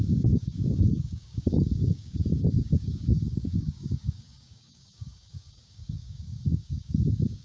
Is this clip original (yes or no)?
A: no